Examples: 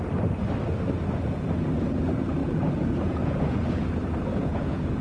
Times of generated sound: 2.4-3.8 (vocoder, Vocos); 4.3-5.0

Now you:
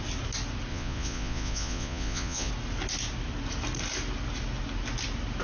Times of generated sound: 0.7-2.5 (vocoder, Vocos)

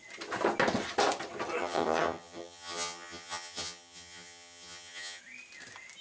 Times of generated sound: 1.6-5.2 (vocoder, HiFi-GAN)

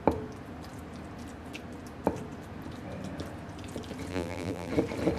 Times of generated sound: 4.1-4.7 (vocoder, BigVGAN v2)

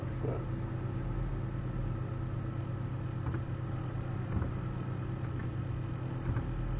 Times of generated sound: none

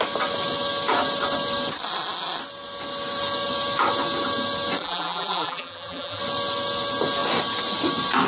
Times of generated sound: 4.8-6.2 (vocoder, BigVGAN v2)